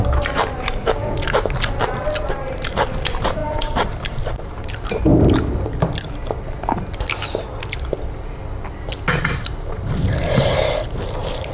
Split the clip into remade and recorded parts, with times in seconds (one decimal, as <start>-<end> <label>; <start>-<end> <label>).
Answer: 0.0-0.8 remade; 0.8-2.3 recorded; 2.3-5.1 remade; 5.1-9.1 recorded; 9.1-11.5 remade